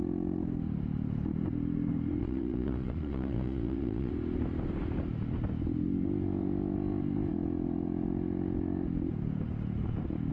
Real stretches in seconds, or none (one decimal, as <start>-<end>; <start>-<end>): 0.0-2.2; 4.1-10.3